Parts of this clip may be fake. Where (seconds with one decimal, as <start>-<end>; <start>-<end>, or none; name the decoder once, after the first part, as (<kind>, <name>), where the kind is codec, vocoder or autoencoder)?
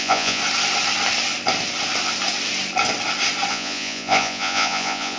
0.0-0.4 (vocoder, Vocos); 3.5-5.2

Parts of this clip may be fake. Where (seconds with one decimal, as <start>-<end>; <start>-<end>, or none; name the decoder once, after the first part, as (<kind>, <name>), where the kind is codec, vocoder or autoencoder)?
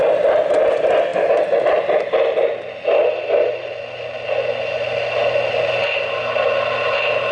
none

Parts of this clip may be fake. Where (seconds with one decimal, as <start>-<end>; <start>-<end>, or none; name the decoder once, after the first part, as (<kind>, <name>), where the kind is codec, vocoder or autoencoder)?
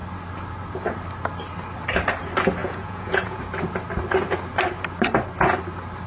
2.6-3.4 (vocoder, Vocos)